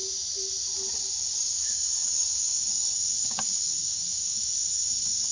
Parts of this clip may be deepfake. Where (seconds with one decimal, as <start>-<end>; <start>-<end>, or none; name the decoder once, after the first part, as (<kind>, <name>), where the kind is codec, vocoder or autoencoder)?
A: 1.0-5.3 (codec, DAC)